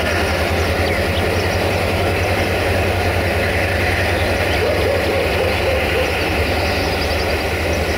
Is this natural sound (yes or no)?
yes